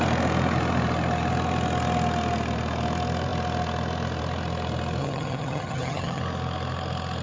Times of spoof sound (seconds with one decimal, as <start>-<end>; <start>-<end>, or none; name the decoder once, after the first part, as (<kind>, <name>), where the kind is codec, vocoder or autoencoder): 5.0-6.2 (vocoder, HiFi-GAN)